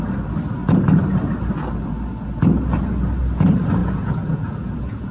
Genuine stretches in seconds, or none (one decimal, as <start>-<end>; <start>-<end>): 0.0-3.8